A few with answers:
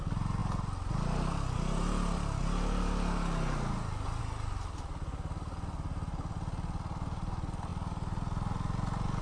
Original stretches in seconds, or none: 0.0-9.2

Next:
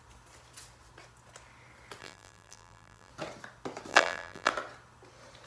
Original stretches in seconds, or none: 0.0-2.0; 3.1-3.9; 4.5-5.5

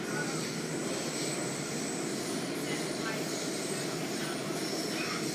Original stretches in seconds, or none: 0.0-5.3

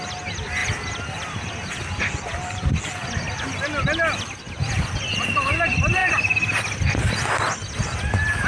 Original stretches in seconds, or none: 0.0-8.5

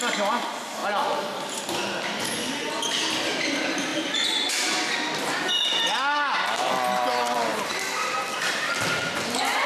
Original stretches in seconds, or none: 0.0-9.7

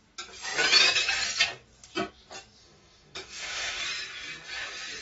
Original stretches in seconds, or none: 0.0-2.6; 3.8-5.0